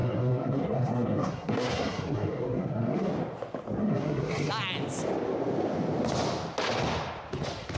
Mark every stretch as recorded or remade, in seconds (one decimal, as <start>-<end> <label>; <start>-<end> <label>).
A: 0.0-3.1 remade; 3.1-3.8 recorded; 3.8-4.5 remade; 4.5-7.8 recorded

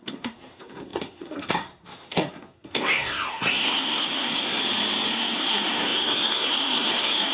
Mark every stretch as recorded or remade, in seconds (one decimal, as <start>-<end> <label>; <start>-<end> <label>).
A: 0.0-4.6 remade; 4.6-5.1 recorded; 5.1-7.3 remade

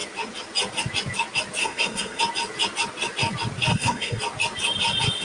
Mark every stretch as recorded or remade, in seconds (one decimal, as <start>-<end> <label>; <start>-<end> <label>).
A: 0.0-1.6 recorded; 1.6-2.2 remade; 2.2-3.7 recorded; 3.7-4.2 remade; 4.2-5.2 recorded

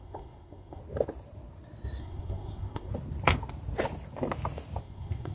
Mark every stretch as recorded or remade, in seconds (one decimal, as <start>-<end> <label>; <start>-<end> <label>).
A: 0.0-0.8 remade; 0.8-2.0 recorded; 2.0-2.9 remade; 2.9-4.8 recorded; 4.8-5.3 remade

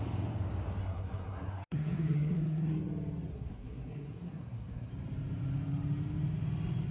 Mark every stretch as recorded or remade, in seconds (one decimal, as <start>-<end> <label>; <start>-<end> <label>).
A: 0.0-0.8 recorded; 0.8-2.7 remade; 2.7-3.3 recorded; 3.3-4.9 remade; 4.9-6.9 recorded

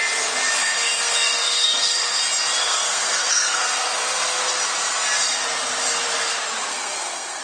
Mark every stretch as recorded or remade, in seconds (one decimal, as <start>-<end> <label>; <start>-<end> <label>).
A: 0.0-0.6 recorded; 0.6-2.2 remade; 2.2-2.6 recorded; 2.6-4.4 remade; 4.4-6.7 recorded; 6.7-7.4 remade